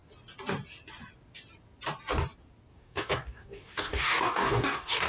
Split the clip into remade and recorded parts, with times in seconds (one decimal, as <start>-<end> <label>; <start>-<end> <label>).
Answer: 0.0-2.7 recorded; 2.7-5.1 remade